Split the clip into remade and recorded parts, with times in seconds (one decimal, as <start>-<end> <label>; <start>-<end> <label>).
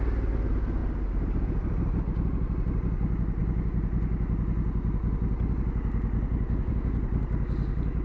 0.0-8.0 recorded